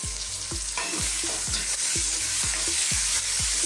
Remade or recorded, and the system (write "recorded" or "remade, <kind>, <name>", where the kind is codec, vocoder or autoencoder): remade, codec, DAC